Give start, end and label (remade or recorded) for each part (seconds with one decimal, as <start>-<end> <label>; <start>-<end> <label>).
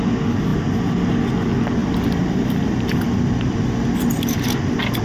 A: 0.0-1.8 recorded; 1.8-5.0 remade